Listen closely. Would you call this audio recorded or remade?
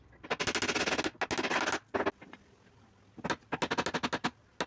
recorded